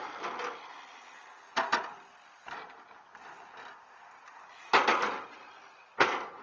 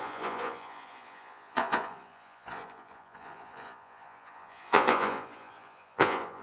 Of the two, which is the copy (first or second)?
second